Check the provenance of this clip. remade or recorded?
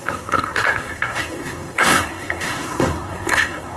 remade